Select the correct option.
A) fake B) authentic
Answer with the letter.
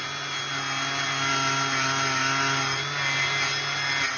B